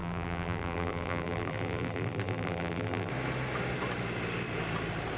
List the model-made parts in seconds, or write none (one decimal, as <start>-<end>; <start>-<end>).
0.0-3.1